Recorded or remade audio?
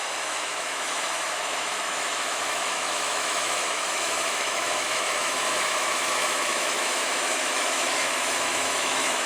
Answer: remade